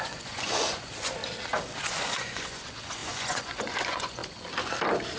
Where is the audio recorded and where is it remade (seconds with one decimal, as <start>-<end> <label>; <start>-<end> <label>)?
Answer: 0.0-1.2 remade; 1.2-1.8 recorded; 1.8-4.2 remade; 4.2-5.2 recorded